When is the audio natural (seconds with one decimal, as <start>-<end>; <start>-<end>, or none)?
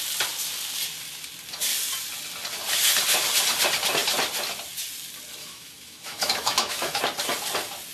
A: 0.0-5.4; 7.0-7.9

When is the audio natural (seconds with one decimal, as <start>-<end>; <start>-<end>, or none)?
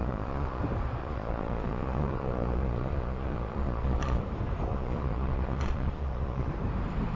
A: 0.6-1.0; 4.2-4.7; 6.5-7.2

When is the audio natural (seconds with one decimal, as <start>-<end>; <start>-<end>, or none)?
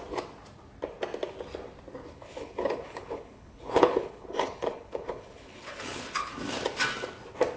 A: 0.0-2.0; 6.3-7.6